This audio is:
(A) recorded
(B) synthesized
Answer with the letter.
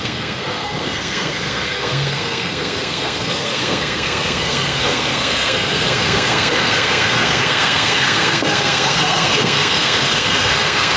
B